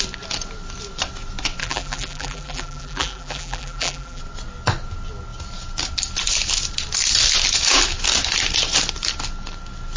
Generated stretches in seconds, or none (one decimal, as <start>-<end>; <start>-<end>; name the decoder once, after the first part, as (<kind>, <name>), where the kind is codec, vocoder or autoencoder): 1.6-4.2 (vocoder, BigVGAN v2)

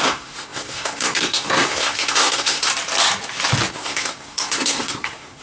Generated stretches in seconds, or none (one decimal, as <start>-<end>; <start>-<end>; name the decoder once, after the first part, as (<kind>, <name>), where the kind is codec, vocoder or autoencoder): 0.0-2.7 (codec, SNAC); 3.7-5.4

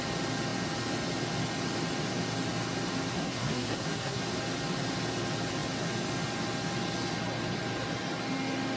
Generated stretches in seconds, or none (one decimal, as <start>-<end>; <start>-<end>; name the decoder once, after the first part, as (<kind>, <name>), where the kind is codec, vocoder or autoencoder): 3.1-4.2 (codec, SNAC)

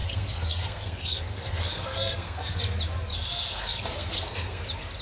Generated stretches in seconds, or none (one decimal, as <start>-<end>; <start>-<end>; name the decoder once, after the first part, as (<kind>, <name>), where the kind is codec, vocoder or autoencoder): 0.0-2.6 (codec, SNAC); 3.1-4.6

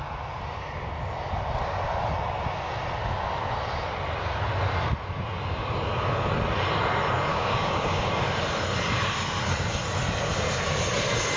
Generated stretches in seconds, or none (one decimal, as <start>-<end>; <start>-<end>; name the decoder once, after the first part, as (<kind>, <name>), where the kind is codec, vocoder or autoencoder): 7.3-8.1 (codec, DAC)

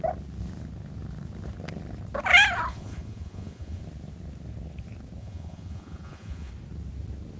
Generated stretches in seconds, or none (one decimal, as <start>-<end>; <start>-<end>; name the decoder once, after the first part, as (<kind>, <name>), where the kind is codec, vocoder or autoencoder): 2.7-3.8 (vocoder, Vocos); 5.2-6.5

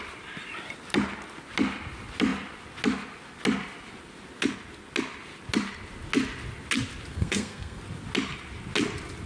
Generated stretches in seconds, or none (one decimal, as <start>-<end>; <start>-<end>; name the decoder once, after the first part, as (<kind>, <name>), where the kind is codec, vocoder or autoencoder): 7.1-7.8 (codec, SNAC)

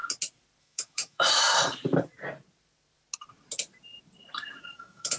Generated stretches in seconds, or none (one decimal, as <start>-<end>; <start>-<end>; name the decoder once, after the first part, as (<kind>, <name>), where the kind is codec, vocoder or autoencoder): 0.6-1.5 (autoencoder, DAC-VAE); 4.6-5.2